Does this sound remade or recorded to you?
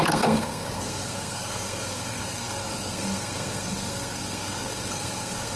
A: remade